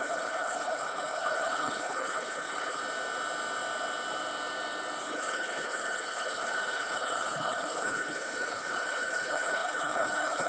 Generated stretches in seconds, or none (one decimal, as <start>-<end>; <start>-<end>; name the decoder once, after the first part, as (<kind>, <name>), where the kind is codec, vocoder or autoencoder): 0.0-2.8 (codec, HILCodec); 5.0-10.5